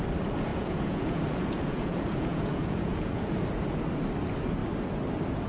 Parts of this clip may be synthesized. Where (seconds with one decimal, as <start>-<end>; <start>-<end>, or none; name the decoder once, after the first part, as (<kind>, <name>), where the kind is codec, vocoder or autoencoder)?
0.5-3.8 (vocoder, Vocos)